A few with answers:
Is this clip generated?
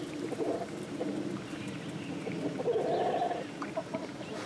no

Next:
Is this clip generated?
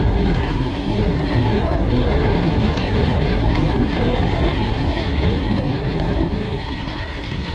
yes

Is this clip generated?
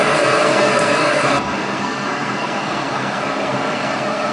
yes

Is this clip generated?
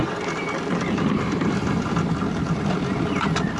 yes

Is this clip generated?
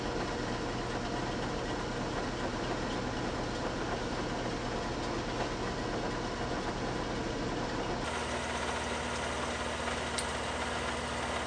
no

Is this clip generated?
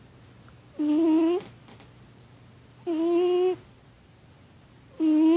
no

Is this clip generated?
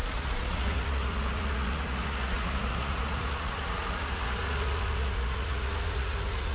yes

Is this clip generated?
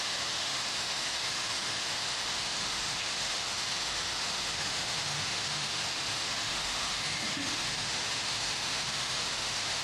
yes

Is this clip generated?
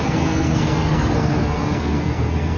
yes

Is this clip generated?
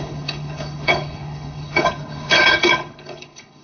yes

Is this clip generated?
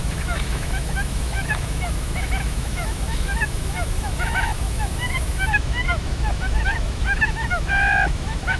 yes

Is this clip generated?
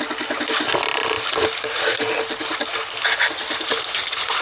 no